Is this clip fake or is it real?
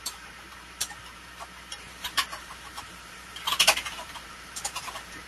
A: fake